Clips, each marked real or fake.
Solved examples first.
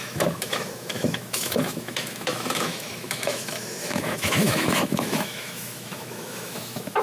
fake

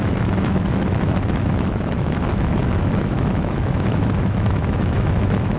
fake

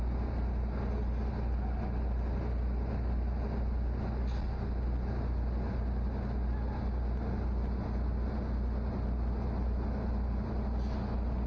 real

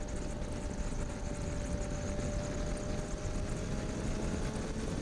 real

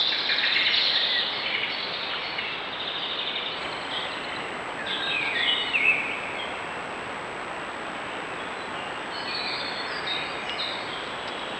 real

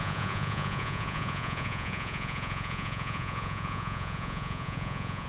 fake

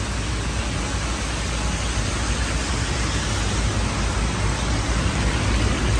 real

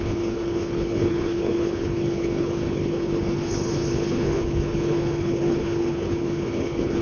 fake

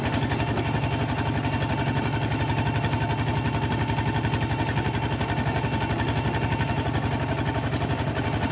real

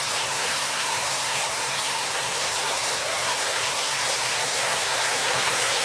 fake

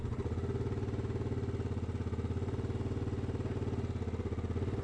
real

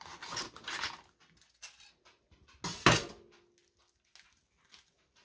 real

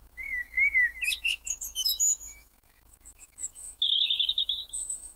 fake